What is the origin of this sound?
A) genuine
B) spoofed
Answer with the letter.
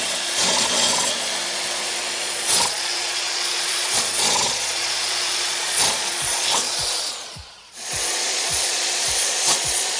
B